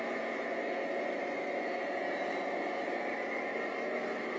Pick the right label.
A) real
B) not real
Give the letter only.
B